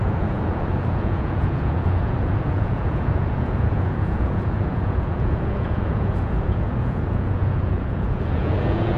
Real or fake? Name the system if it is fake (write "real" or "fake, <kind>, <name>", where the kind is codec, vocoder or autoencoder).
fake, vocoder, Vocos